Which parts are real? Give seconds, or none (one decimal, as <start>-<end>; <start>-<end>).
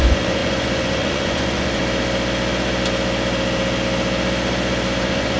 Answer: 1.8-5.0